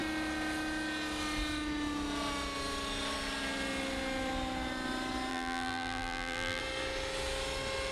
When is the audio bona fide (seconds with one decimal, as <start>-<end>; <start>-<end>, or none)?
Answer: 0.0-5.3; 6.6-7.9